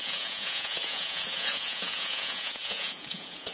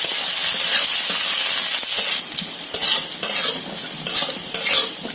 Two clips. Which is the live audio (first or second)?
second